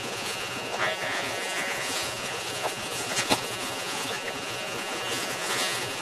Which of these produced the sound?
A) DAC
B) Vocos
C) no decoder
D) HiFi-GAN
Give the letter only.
B